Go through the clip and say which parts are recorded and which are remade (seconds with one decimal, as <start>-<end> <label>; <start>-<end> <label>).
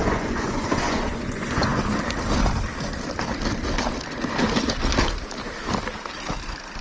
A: 0.0-1.8 remade; 1.8-6.8 recorded